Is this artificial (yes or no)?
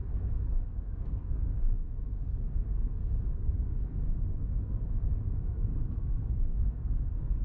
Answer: yes